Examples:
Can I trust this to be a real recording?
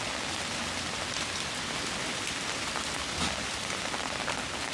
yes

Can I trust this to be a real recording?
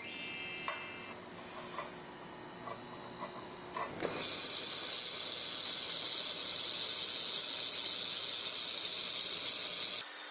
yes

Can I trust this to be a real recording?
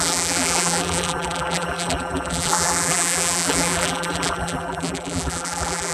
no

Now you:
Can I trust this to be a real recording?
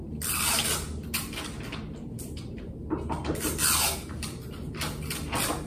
yes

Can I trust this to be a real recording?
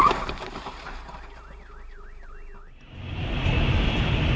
yes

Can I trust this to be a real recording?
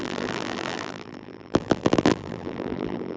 no